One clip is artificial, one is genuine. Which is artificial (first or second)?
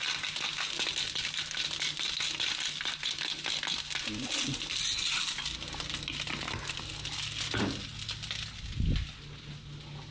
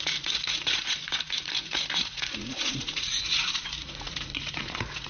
second